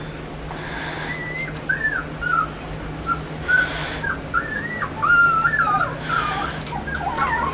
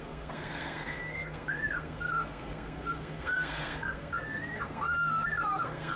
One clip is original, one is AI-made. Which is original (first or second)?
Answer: first